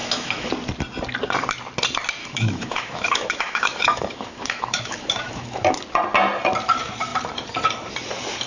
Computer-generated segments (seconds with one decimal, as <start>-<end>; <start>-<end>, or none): 0.0-0.5; 2.2-5.7